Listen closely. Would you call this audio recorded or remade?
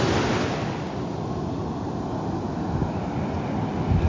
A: recorded